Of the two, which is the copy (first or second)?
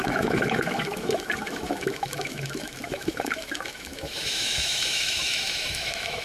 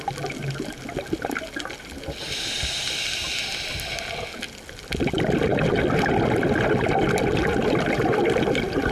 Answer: first